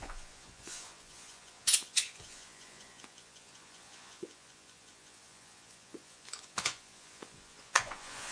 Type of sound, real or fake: fake